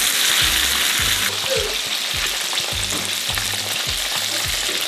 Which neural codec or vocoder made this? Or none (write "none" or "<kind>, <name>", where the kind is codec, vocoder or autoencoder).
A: none